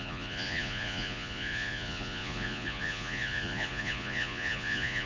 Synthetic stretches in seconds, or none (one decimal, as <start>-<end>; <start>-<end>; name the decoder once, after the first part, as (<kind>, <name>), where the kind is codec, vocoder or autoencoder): 0.0-5.1 (vocoder, Vocos)